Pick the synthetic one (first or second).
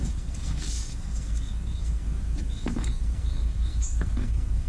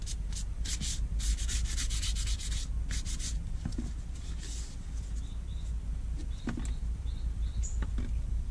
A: first